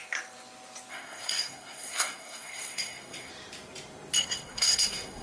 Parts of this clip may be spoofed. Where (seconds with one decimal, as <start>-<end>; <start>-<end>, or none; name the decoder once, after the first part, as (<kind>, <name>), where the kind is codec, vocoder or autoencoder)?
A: 0.9-3.3 (codec, SNAC); 4.2-5.2